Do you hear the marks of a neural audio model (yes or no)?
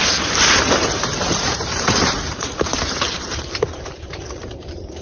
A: yes